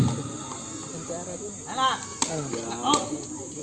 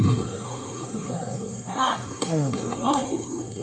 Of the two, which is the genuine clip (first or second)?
first